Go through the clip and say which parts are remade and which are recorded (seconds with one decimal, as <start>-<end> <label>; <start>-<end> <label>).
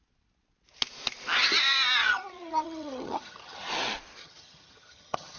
0.0-2.0 recorded; 2.0-3.7 remade; 3.7-4.2 recorded; 4.2-5.4 remade